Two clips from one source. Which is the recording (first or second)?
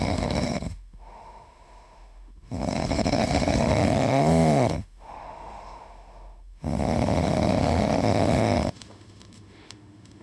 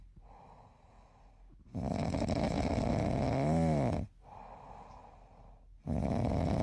second